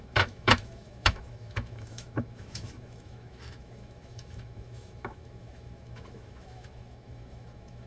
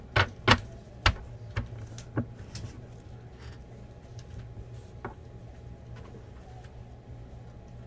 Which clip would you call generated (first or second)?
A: first